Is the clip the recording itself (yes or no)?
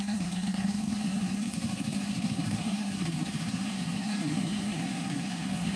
no